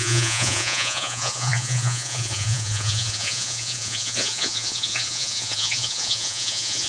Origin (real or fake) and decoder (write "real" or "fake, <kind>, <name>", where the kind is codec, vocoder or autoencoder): fake, vocoder, Vocos